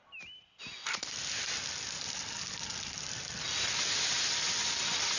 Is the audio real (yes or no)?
yes